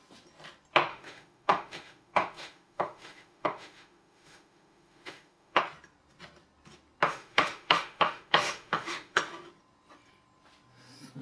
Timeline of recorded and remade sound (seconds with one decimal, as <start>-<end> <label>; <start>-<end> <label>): 0.0-0.9 recorded; 0.9-5.6 remade; 5.6-7.1 recorded; 7.1-9.2 remade; 9.2-11.2 recorded